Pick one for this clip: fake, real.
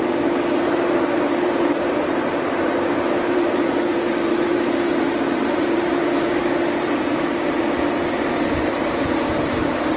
fake